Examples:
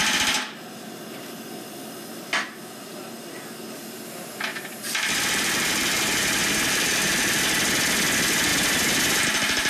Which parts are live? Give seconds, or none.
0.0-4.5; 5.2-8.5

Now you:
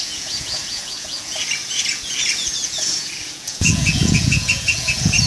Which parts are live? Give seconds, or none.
none

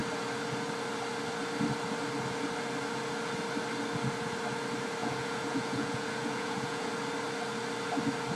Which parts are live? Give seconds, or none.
0.0-5.0; 6.9-8.4

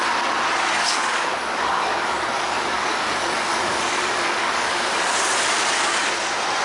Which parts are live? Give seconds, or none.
0.0-0.8; 4.8-6.6